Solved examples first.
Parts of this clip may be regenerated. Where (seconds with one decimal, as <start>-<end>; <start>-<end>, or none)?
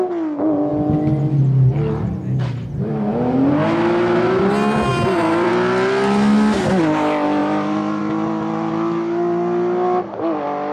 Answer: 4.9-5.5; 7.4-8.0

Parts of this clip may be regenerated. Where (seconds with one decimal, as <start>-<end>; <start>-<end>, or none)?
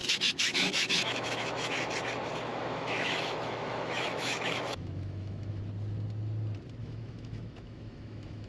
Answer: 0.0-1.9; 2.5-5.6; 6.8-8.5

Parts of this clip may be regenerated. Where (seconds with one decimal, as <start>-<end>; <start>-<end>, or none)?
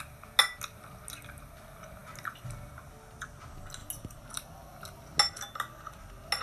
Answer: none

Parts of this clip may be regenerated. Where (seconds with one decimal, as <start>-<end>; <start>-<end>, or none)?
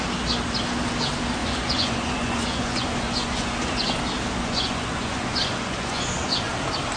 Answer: 1.4-4.0; 4.4-6.5